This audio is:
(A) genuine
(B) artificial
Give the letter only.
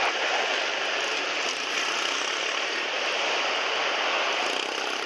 A